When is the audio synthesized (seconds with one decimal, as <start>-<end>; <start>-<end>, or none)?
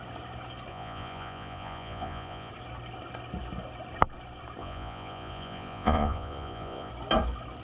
0.7-2.5; 4.6-6.9